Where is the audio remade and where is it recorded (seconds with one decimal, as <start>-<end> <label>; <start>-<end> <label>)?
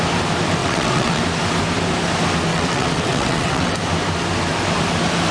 0.0-0.6 recorded; 0.6-1.2 remade; 1.2-2.5 recorded; 2.5-3.7 remade; 3.7-5.3 recorded